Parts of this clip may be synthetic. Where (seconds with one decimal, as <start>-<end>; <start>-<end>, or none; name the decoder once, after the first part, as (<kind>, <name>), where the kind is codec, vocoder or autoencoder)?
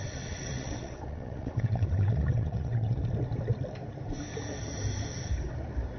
0.0-3.0 (vocoder, WaveNeXt)